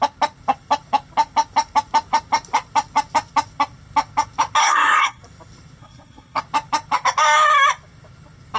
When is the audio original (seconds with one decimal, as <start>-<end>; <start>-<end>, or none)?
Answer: 0.0-4.6; 5.2-5.8; 6.4-8.6